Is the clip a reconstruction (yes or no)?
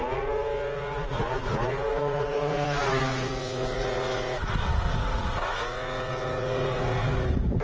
yes